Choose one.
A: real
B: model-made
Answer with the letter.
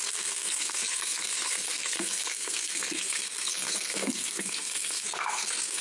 B